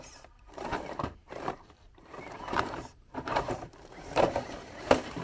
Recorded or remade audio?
remade